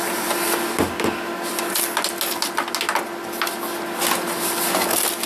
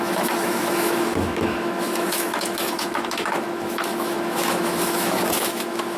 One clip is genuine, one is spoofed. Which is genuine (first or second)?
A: first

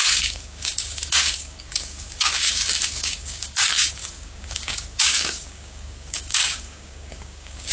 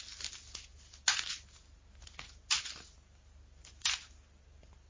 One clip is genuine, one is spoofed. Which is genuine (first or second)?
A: second